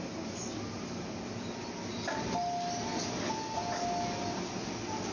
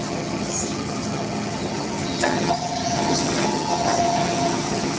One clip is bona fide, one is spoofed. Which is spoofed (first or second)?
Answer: second